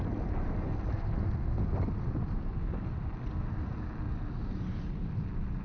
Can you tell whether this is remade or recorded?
recorded